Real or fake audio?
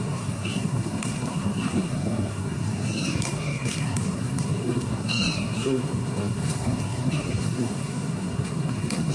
fake